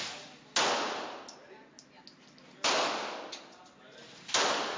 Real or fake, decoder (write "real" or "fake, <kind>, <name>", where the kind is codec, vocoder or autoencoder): real